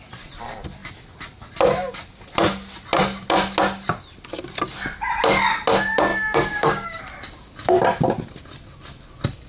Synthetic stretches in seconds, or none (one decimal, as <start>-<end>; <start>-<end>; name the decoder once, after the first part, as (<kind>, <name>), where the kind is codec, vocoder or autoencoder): 6.1-7.0 (codec, DAC)